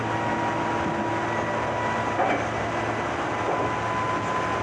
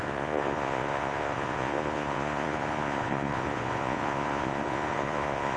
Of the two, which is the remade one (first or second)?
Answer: second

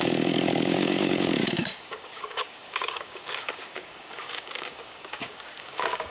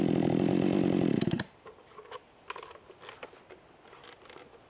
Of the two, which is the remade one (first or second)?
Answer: first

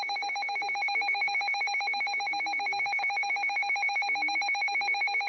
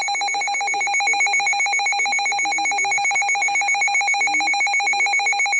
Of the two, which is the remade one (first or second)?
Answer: first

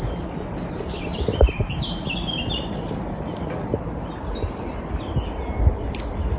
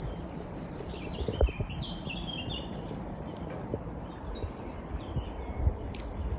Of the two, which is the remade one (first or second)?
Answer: second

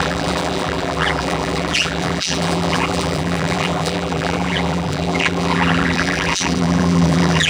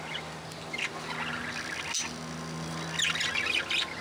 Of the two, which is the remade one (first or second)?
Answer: first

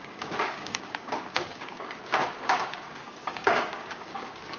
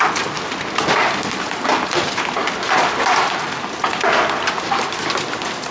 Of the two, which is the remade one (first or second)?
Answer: first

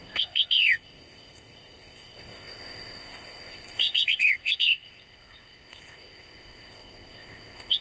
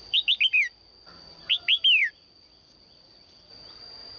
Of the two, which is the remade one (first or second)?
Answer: first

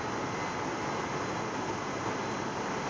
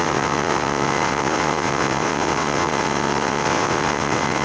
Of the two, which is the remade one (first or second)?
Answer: second